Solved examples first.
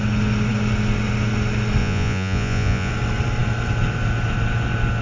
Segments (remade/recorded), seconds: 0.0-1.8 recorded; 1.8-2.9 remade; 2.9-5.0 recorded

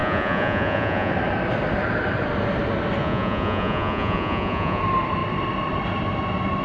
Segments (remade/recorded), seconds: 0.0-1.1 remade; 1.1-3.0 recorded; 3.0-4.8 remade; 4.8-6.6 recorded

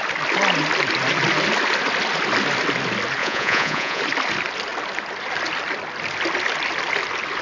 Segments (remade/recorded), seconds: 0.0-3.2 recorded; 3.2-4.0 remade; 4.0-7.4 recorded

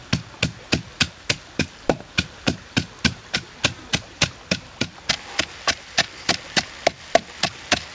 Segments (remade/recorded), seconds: 0.0-7.9 recorded

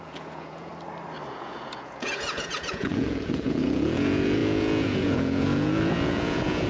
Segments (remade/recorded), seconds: 0.0-0.7 remade; 0.7-1.3 recorded; 1.3-6.7 remade

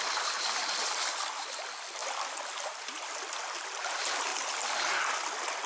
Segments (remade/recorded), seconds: 0.0-5.7 recorded

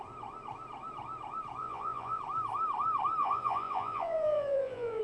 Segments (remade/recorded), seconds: 0.0-1.6 recorded; 1.6-2.2 remade; 2.2-3.2 recorded; 3.2-5.0 remade

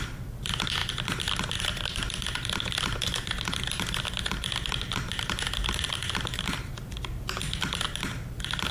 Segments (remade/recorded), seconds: 0.0-8.7 recorded